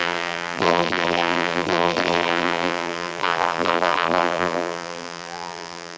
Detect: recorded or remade remade